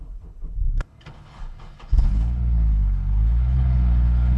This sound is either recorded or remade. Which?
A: remade